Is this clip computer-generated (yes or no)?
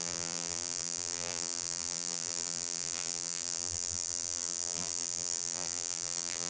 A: yes